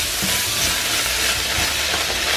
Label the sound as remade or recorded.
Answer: recorded